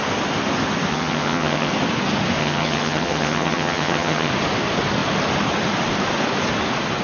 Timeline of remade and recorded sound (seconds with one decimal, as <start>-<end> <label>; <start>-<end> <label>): 0.0-0.9 recorded; 0.9-1.7 remade; 1.7-2.4 recorded; 2.4-4.3 remade; 4.3-7.0 recorded